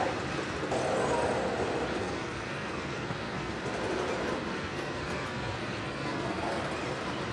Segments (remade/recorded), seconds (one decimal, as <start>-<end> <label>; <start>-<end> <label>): 0.0-2.0 recorded; 2.0-3.5 remade; 3.5-4.5 recorded; 4.5-6.6 remade; 6.6-7.3 recorded